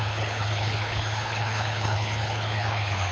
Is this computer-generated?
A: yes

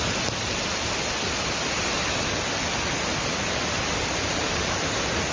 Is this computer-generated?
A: yes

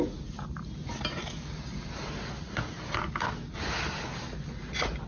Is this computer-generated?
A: no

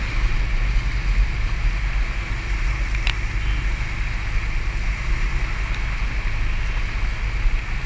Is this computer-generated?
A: no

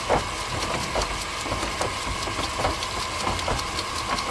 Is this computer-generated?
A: no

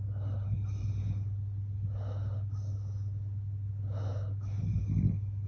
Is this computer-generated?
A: no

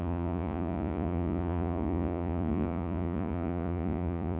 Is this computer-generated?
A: yes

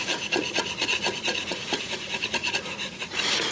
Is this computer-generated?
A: yes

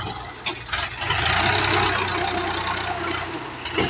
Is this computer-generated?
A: no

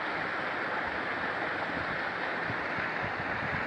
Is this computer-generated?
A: no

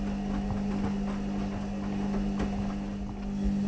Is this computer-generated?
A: no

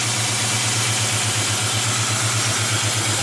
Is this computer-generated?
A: no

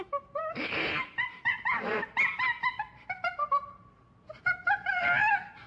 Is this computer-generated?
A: no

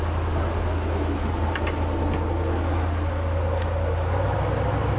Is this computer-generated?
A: no